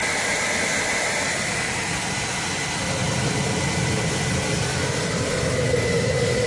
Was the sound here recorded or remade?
recorded